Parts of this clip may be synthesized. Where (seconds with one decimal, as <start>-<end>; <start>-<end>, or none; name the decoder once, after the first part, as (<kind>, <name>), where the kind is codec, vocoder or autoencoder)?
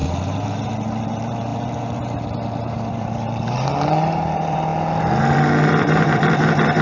0.0-4.7 (vocoder, BigVGAN v2); 5.8-6.8